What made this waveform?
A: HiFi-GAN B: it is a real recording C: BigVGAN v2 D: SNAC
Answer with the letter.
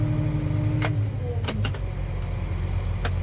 B